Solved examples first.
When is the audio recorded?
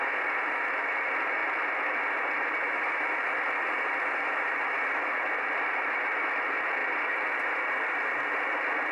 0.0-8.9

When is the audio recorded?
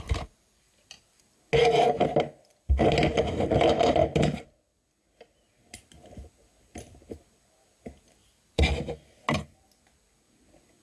0.0-8.2; 8.9-10.8